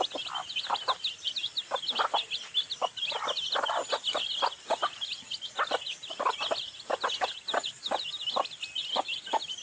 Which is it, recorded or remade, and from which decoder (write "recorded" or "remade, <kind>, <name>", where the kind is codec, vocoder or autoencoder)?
recorded